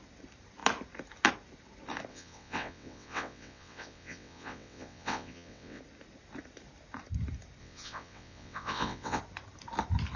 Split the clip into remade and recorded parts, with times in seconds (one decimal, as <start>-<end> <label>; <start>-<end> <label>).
0.0-2.1 recorded; 2.1-5.8 remade; 5.8-7.6 recorded; 7.6-9.2 remade; 9.2-10.2 recorded